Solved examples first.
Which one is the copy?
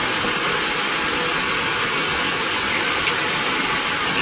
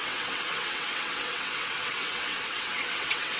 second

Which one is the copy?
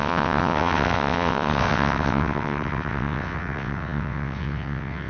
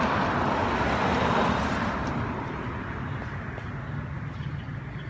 first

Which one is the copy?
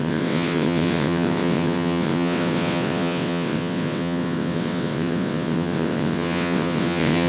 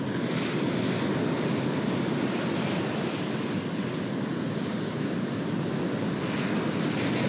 first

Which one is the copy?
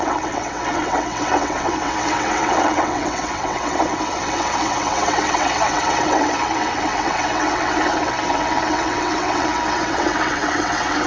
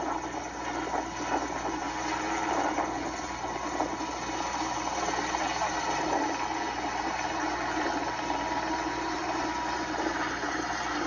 first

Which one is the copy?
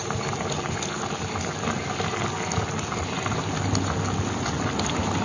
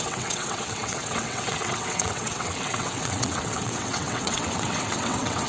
second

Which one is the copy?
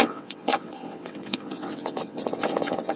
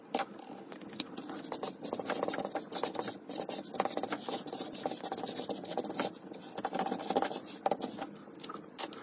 first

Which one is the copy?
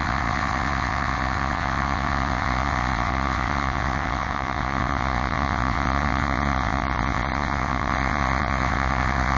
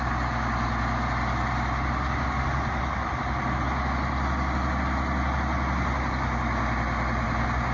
first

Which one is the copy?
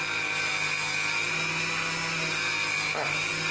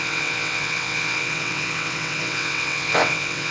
second